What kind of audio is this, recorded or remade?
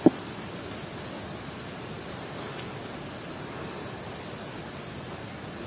recorded